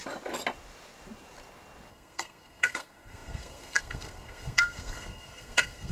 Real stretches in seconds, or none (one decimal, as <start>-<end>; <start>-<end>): 0.0-1.9